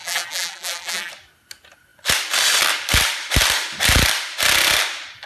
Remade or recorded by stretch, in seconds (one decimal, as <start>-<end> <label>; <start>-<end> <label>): 0.0-1.1 remade; 1.1-5.3 recorded